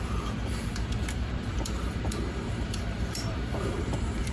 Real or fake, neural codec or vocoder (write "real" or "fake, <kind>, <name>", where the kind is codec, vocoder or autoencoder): fake, vocoder, BigVGAN v2